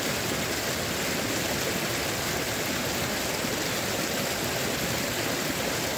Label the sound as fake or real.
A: real